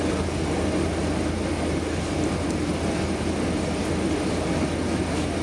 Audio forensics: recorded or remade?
recorded